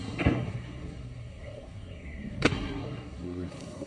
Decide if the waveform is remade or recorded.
remade